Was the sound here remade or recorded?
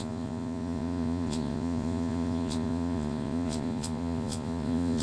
remade